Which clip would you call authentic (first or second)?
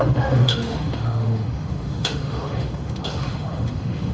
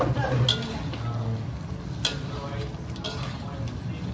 second